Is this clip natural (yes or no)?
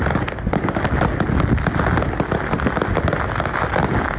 yes